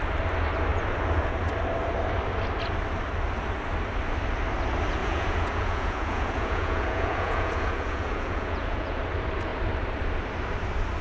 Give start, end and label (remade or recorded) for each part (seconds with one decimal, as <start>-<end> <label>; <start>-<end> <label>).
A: 0.0-5.0 recorded; 5.0-9.0 remade; 9.0-11.0 recorded